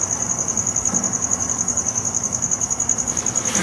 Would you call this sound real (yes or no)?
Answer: no